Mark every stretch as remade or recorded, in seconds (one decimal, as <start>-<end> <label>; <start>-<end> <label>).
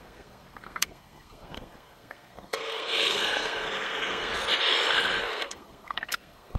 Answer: 0.0-4.3 remade; 4.3-5.2 recorded; 5.2-6.6 remade